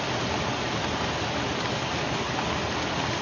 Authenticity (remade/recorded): recorded